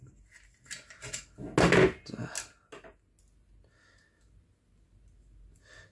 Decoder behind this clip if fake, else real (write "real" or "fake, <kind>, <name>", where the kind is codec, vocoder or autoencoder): real